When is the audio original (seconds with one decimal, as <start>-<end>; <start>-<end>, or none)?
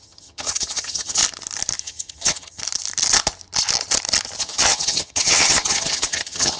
1.2-1.8; 2.6-4.4